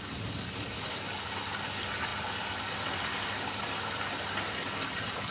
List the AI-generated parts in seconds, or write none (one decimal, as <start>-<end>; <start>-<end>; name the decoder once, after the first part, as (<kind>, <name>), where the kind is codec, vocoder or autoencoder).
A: none